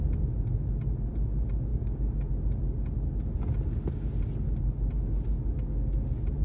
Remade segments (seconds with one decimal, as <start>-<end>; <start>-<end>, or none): 1.7-2.3